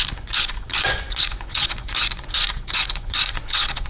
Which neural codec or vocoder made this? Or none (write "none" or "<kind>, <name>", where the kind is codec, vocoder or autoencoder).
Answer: vocoder, Vocos